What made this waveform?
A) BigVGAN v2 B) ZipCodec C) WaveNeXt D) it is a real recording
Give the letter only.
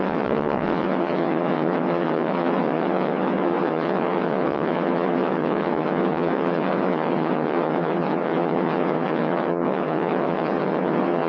C